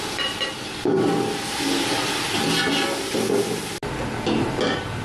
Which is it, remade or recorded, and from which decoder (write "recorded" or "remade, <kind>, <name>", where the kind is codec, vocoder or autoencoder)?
recorded